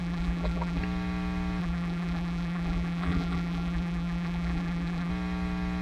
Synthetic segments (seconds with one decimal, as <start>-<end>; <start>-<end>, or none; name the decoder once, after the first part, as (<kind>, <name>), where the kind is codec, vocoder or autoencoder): 0.0-0.8 (vocoder, BigVGAN v2); 1.6-5.1